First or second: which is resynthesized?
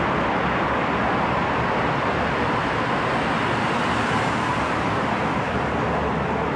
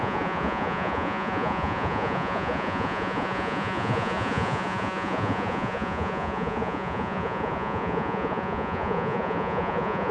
second